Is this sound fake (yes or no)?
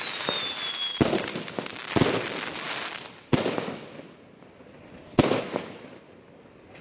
no